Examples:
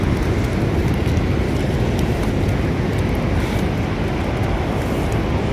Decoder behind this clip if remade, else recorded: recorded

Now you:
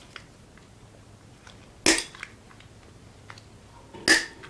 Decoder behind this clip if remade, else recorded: recorded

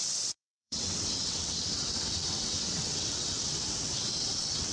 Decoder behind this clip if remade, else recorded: remade, vocoder, WaveNeXt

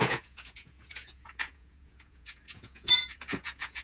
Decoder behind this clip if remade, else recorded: remade, vocoder, Vocos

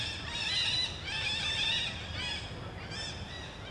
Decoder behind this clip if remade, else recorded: recorded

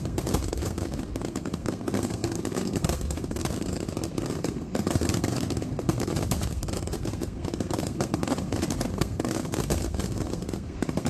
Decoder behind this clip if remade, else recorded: remade, codec, SNAC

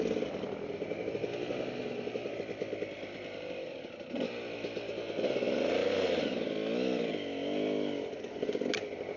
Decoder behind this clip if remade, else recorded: recorded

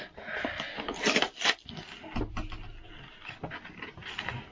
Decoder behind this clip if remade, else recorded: recorded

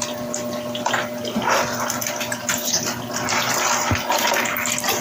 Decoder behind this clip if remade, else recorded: recorded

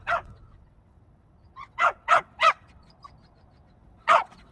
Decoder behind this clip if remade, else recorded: remade, vocoder, WaveNeXt